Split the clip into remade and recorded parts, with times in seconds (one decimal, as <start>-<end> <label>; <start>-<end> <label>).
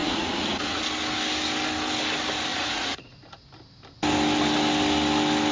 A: 0.0-0.8 remade; 0.8-2.5 recorded; 2.5-3.4 remade; 3.4-5.5 recorded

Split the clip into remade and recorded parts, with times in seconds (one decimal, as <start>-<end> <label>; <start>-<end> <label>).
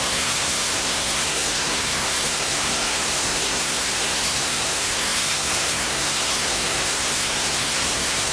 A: 0.0-8.3 remade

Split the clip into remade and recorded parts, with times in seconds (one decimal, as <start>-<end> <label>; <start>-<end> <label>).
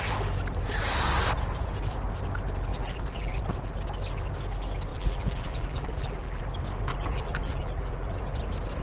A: 0.0-2.7 recorded; 2.7-3.4 remade; 3.4-4.9 recorded; 4.9-6.4 remade; 6.4-6.9 recorded; 6.9-8.2 remade; 8.2-8.8 recorded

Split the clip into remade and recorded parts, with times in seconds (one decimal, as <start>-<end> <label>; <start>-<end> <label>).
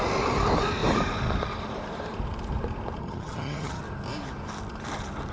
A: 0.0-3.0 recorded; 3.0-3.8 remade; 3.8-5.3 recorded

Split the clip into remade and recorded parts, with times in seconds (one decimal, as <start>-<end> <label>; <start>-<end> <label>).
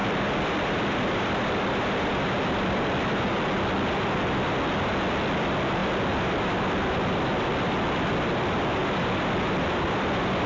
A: 0.0-3.3 remade; 3.3-5.8 recorded; 5.8-10.5 remade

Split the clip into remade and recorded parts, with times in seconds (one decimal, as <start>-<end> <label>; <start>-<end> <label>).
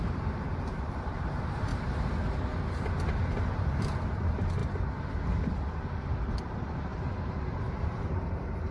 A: 0.0-1.7 remade; 1.7-3.2 recorded; 3.2-4.6 remade; 4.6-6.4 recorded; 6.4-8.7 remade